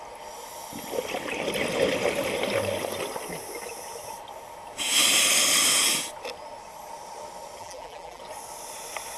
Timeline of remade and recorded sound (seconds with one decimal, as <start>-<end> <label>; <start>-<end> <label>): 0.0-7.6 recorded; 7.6-8.2 remade; 8.2-9.2 recorded